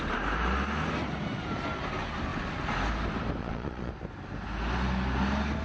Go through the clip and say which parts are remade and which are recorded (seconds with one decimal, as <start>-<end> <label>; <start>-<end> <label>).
0.0-3.4 recorded; 3.4-3.9 remade; 3.9-5.6 recorded